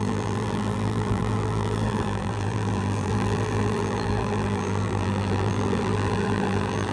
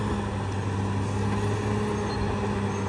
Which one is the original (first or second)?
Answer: second